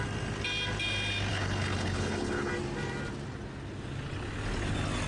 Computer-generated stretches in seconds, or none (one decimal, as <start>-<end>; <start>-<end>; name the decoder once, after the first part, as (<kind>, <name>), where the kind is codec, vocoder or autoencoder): 1.3-2.5 (codec, HILCodec)